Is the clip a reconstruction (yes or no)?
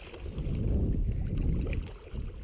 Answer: no